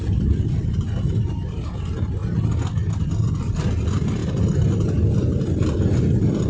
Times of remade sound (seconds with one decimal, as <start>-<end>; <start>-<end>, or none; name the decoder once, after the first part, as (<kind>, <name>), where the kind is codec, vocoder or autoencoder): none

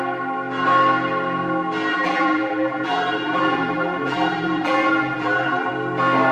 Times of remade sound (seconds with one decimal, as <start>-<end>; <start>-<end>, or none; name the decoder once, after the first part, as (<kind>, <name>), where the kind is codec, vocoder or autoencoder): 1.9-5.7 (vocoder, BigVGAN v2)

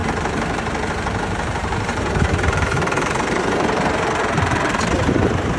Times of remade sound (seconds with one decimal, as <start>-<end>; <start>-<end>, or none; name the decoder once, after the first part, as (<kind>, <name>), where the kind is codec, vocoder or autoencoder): 0.0-5.6 (vocoder, BigVGAN v2)